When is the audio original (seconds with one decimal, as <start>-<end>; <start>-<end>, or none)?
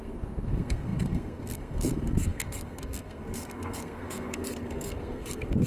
none